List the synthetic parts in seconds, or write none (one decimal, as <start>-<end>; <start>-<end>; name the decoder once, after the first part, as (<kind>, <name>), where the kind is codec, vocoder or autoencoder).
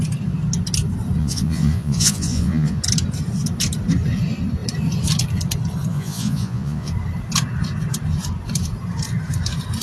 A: 1.2-2.8 (vocoder, Vocos); 5.9-6.9